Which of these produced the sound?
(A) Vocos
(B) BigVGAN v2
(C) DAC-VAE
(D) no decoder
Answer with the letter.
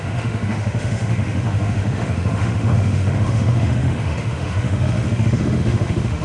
C